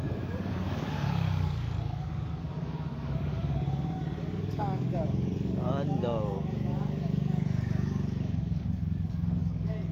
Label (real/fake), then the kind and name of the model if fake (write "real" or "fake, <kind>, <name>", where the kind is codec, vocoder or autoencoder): fake, codec, DAC